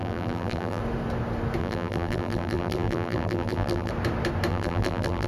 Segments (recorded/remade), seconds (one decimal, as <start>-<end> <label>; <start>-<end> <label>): 0.0-0.8 remade; 0.8-1.6 recorded; 1.6-3.9 remade; 3.9-4.5 recorded; 4.5-5.3 remade